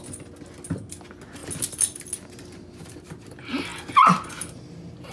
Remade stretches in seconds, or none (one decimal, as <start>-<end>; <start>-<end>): none